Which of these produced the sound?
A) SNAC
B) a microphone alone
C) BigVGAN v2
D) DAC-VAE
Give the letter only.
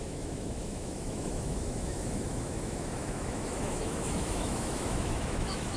D